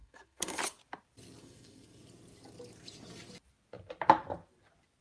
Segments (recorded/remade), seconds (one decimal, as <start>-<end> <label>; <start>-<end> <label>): 0.0-0.6 remade; 0.6-1.4 recorded; 1.4-2.0 remade; 2.0-5.0 recorded